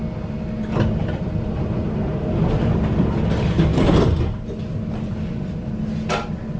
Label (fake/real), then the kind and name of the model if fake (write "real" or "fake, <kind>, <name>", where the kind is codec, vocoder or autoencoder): real